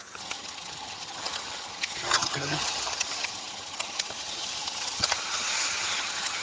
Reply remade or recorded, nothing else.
remade